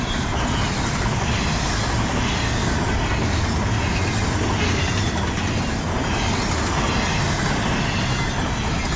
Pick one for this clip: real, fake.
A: real